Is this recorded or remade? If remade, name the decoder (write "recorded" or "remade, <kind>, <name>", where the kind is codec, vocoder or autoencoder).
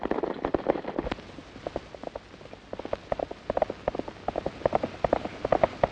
recorded